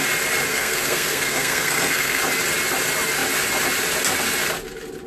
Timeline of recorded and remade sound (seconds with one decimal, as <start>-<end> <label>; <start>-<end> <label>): 0.0-0.5 recorded; 0.5-2.2 remade; 2.2-5.1 recorded